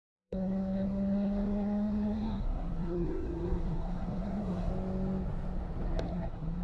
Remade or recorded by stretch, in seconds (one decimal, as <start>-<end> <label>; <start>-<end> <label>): 0.0-4.7 remade; 4.7-6.0 recorded; 6.0-6.6 remade